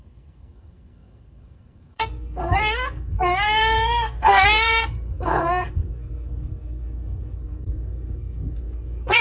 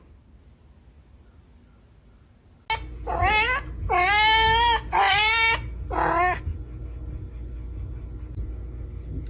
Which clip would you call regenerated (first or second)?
first